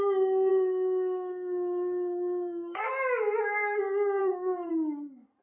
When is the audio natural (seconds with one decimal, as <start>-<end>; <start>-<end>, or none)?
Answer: 0.0-0.5; 2.9-4.2; 4.7-5.4